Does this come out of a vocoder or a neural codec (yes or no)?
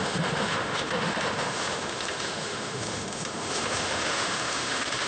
yes